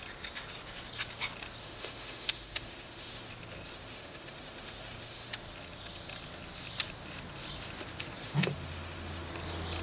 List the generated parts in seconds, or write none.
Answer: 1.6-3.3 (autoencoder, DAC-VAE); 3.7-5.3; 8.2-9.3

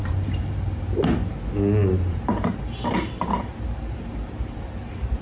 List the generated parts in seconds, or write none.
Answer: 0.0-1.3 (vocoder, BigVGAN v2); 1.8-5.2

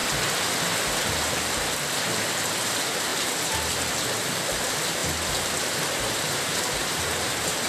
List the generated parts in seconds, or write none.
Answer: 1.0-5.0 (vocoder, BigVGAN v2); 5.9-7.7

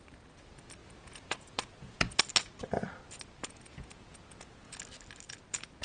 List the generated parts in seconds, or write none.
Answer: 0.8-2.2 (vocoder, Vocos); 3.4-4.8

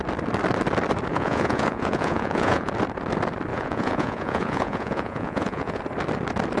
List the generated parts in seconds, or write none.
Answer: 1.1-2.7 (vocoder, Vocos); 3.5-5.8

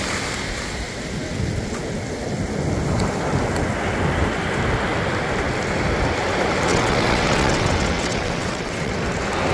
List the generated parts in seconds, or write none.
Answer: 6.7-8.9 (vocoder, WaveNeXt)